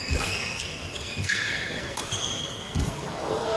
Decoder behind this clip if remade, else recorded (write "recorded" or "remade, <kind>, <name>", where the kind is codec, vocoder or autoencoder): remade, codec, SNAC